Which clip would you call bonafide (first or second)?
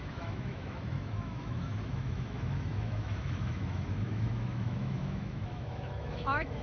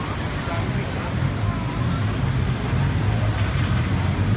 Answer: second